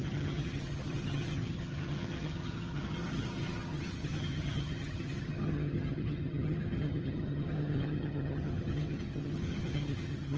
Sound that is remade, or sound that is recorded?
remade